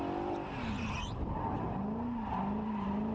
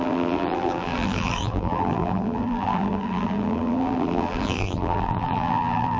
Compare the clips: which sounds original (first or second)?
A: first